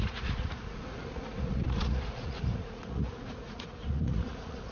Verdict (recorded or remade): remade